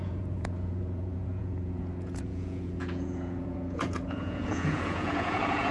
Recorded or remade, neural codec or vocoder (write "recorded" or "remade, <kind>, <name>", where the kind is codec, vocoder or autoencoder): remade, vocoder, Vocos